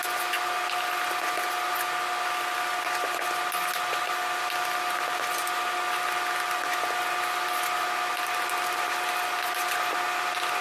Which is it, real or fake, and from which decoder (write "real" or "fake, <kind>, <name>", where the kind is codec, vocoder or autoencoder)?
real